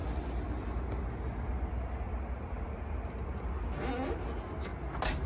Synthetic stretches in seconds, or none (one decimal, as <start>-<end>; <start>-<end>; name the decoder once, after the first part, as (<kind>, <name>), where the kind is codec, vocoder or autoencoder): none